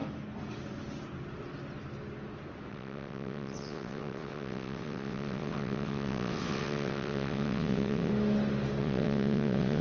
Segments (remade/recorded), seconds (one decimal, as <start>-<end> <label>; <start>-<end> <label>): 0.0-2.7 recorded; 2.7-8.1 remade; 8.1-8.8 recorded; 8.8-9.8 remade